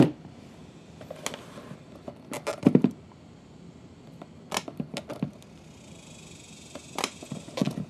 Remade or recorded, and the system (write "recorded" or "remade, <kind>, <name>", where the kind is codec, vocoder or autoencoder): recorded